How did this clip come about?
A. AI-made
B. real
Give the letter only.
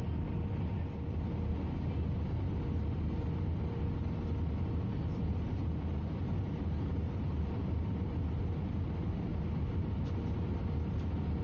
B